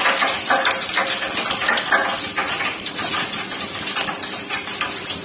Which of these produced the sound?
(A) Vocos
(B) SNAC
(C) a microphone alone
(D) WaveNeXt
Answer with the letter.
C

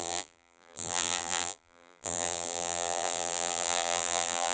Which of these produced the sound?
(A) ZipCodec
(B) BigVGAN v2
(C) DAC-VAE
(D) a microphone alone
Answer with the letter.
B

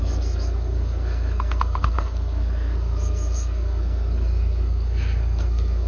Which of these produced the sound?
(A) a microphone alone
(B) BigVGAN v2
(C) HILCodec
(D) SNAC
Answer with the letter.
D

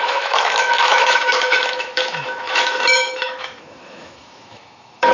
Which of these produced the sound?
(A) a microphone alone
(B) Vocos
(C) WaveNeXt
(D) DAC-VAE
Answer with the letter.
D